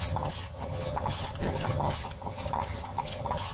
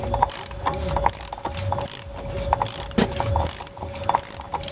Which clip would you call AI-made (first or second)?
first